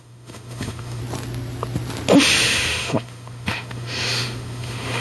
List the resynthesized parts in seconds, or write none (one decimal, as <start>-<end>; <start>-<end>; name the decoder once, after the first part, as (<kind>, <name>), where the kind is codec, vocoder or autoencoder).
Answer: 0.0-1.0 (autoencoder, DAC-VAE); 2.4-5.0